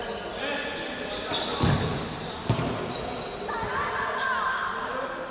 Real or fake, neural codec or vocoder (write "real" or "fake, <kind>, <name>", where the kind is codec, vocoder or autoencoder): real